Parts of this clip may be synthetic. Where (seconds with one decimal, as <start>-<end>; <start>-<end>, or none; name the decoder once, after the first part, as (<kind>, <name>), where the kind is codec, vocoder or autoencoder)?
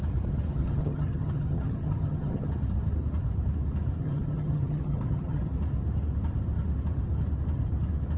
0.5-2.5 (vocoder, HiFi-GAN); 4.0-5.5